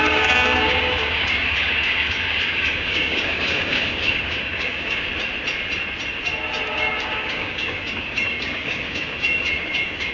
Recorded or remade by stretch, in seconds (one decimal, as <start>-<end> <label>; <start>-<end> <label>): 0.0-5.1 remade; 5.1-6.7 recorded; 6.7-10.1 remade